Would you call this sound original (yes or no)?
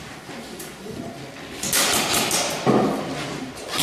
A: yes